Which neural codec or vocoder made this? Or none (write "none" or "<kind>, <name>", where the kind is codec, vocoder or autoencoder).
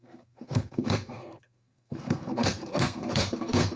codec, SNAC